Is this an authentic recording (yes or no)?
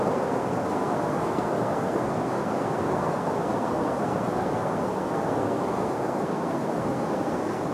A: no